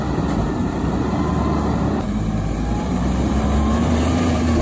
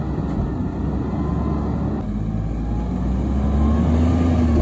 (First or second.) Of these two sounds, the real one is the second